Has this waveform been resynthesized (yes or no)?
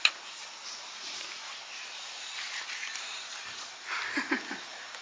no